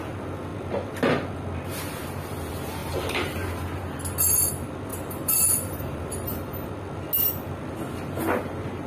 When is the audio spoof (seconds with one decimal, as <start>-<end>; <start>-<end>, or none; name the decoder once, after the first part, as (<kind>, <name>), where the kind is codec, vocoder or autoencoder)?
4.9-6.7 (vocoder, BigVGAN v2)